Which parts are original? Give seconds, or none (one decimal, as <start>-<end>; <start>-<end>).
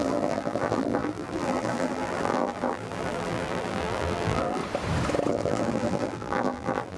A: 4.6-5.3